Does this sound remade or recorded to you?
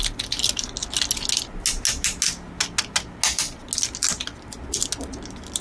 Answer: recorded